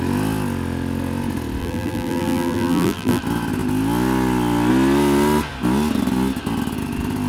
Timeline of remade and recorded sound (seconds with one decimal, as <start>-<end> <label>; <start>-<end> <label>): 0.0-1.6 recorded; 1.6-3.2 remade; 3.2-7.3 recorded